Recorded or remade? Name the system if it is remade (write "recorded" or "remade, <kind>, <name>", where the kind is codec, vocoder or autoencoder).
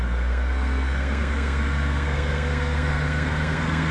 remade, codec, SNAC